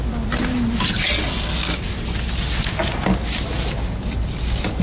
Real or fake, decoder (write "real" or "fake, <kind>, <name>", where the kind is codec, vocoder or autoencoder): real